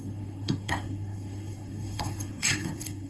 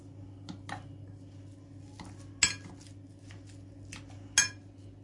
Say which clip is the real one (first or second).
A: second